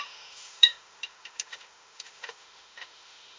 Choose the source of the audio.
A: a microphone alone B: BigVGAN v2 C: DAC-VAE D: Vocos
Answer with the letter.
C